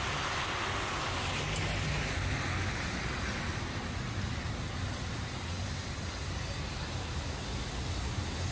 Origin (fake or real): real